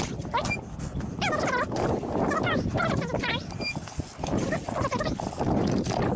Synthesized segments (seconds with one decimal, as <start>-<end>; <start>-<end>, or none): none